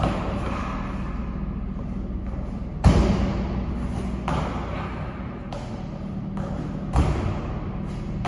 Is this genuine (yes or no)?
yes